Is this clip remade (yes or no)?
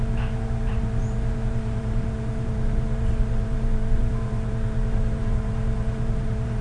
yes